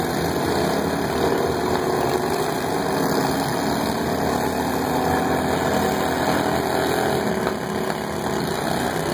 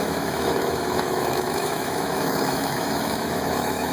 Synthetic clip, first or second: second